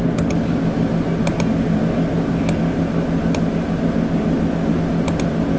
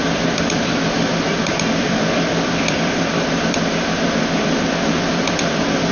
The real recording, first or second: first